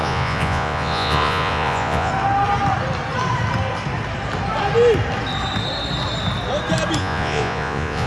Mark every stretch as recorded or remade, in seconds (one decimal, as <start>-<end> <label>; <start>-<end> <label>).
0.0-2.1 remade; 2.1-7.0 recorded; 7.0-8.1 remade